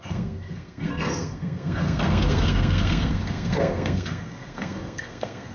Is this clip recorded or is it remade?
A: remade